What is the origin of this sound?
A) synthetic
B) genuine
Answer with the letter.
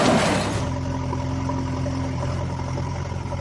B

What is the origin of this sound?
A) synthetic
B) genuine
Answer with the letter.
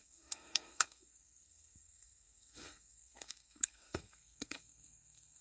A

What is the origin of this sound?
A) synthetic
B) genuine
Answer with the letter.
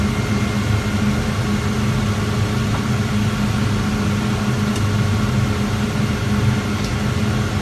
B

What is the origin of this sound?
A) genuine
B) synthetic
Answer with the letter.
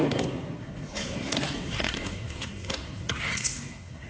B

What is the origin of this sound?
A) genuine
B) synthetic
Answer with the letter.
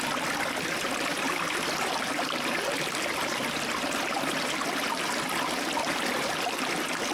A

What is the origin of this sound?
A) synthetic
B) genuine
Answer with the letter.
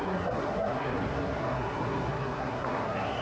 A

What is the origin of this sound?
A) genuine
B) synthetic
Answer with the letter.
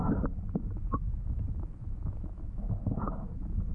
A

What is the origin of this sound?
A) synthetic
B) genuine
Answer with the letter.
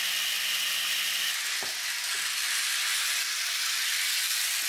B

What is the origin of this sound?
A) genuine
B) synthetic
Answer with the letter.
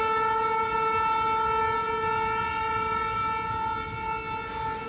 A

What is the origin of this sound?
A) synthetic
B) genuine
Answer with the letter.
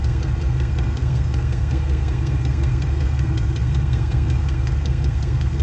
A